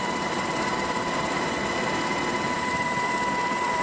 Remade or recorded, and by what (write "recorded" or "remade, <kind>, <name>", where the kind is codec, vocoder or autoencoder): remade, vocoder, BigVGAN v2